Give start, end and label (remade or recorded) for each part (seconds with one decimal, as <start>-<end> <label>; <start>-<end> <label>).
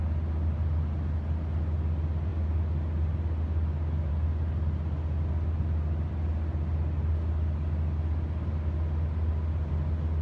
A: 0.0-10.2 recorded